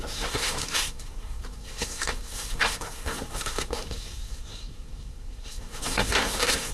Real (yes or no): no